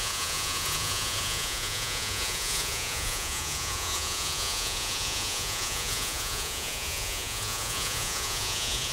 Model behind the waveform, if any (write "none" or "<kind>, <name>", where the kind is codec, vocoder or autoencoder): vocoder, Vocos